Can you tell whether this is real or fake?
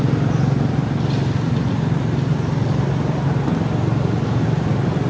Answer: real